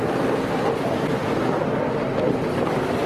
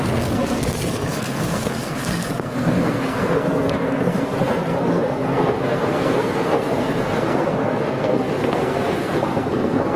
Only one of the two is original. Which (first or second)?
first